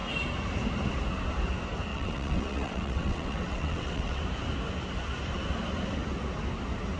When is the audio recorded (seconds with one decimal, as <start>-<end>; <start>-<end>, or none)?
0.0-1.9; 4.2-7.0